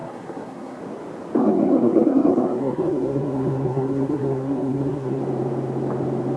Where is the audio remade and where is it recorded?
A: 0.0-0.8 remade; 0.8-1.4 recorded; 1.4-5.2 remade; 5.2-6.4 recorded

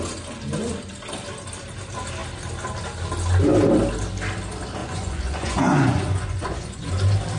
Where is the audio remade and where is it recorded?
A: 0.0-4.8 recorded; 4.8-6.9 remade; 6.9-7.4 recorded